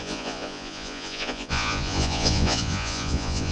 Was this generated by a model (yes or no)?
yes